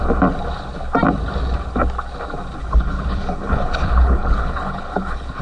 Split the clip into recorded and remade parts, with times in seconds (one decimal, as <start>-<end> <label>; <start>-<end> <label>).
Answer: 0.0-2.6 recorded; 2.6-5.4 remade